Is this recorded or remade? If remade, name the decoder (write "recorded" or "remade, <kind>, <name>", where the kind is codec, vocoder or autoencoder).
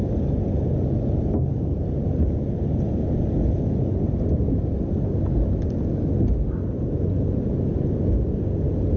recorded